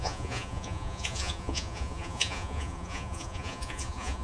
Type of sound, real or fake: fake